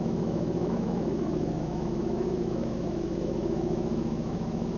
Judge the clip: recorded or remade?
remade